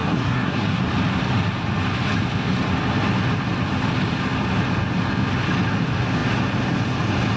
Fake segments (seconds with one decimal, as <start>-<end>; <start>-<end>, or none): 0.0-0.8